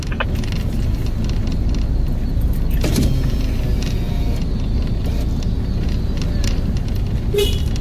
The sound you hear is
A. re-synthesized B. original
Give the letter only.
B